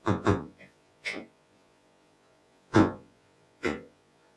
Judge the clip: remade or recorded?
remade